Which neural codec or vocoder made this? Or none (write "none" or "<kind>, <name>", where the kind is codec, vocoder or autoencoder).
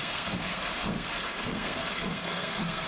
codec, SNAC